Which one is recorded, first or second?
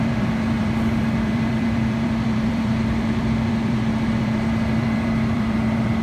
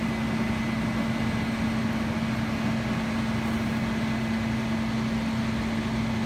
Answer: second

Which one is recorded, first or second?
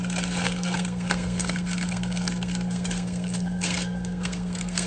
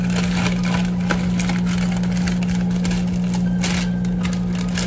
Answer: second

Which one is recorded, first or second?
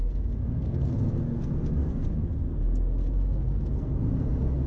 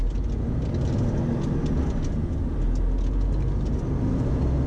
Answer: second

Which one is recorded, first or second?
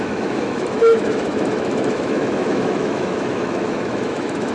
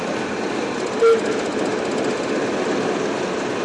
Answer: second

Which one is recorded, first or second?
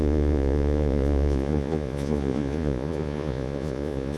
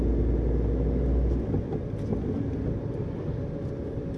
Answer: second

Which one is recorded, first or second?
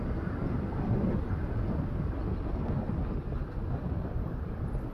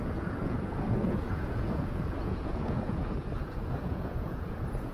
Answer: first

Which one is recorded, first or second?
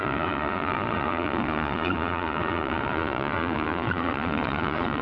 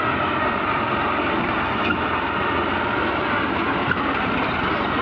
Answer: second